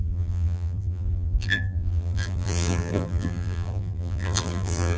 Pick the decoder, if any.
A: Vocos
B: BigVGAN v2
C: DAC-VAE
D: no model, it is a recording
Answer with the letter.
B